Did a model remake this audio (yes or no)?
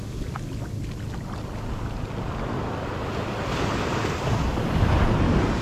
no